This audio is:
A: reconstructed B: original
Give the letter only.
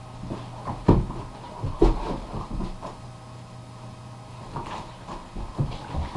B